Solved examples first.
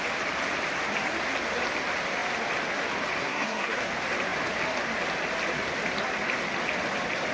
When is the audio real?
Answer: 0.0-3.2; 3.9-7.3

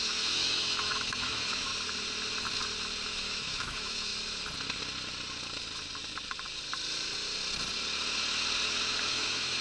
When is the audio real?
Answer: 1.7-3.1; 4.1-9.1

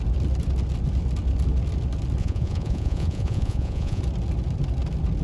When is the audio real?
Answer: 0.0-2.2; 4.0-5.2